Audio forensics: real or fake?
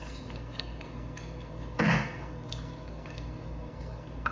fake